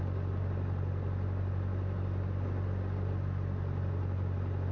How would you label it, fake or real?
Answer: real